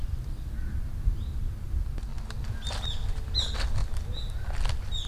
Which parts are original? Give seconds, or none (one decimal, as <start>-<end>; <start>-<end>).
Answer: 0.0-5.1